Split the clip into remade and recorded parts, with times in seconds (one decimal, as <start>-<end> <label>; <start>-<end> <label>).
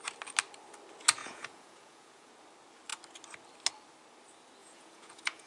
0.0-1.2 recorded; 1.2-2.3 remade; 2.3-4.6 recorded; 4.6-5.5 remade